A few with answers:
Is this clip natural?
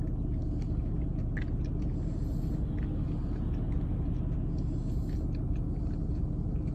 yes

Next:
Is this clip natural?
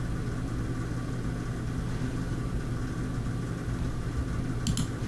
yes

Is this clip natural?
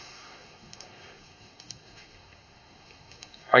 no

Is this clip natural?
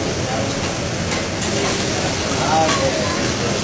yes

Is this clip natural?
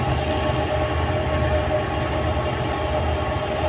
yes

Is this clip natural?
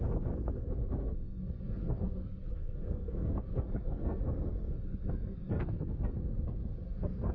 no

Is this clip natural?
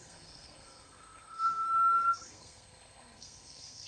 no